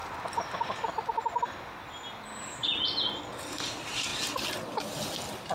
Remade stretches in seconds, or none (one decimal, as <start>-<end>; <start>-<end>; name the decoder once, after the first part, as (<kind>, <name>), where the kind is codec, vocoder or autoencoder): none